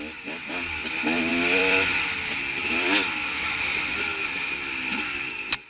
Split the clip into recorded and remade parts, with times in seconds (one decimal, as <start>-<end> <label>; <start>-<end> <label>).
0.0-1.3 recorded; 1.3-1.9 remade; 1.9-2.6 recorded; 2.6-3.7 remade; 3.7-5.7 recorded

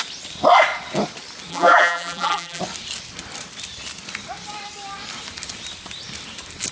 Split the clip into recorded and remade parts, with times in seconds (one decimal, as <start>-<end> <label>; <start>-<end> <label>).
0.0-1.5 recorded; 1.5-2.6 remade; 2.6-6.7 recorded